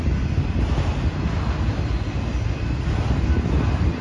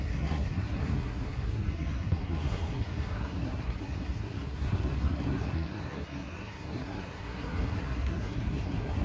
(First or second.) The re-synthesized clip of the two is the second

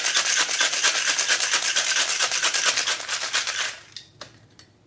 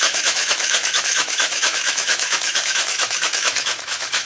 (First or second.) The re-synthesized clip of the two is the second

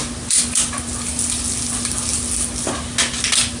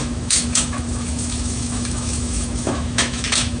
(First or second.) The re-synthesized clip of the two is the second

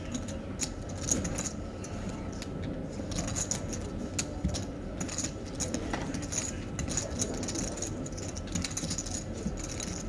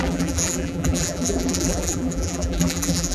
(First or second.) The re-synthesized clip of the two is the second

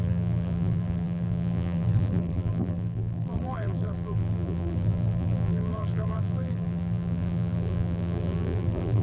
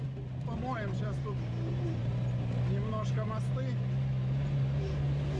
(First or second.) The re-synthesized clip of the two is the first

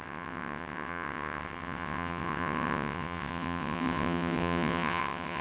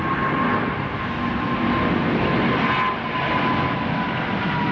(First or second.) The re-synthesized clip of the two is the first